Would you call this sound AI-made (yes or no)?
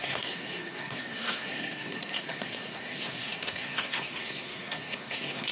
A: yes